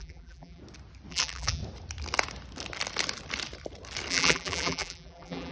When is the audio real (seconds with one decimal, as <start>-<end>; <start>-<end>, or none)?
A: 0.6-1.1; 1.6-4.1